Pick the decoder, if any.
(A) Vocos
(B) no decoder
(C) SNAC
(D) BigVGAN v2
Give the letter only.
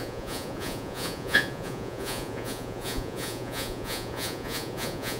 A